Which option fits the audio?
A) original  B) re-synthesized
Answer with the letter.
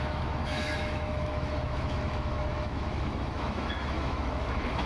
B